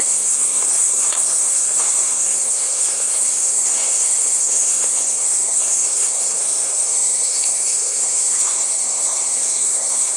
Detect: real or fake fake